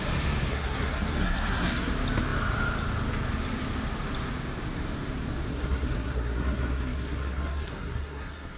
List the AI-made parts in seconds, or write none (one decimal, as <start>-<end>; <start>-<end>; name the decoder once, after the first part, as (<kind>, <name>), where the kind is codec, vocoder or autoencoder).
0.5-1.9 (codec, SNAC); 5.5-8.6